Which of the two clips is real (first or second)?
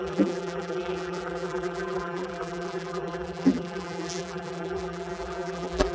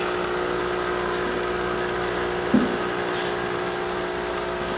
second